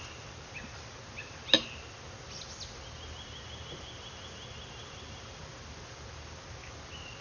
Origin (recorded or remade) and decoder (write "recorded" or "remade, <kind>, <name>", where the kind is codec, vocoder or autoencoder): recorded